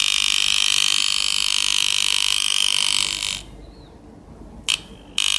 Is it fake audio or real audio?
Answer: real